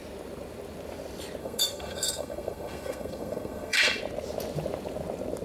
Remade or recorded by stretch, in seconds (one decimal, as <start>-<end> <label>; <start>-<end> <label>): 0.0-1.4 recorded; 1.4-4.0 remade; 4.0-5.4 recorded